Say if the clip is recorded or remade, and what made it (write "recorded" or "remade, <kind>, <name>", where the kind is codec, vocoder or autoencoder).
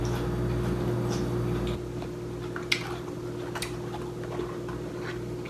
recorded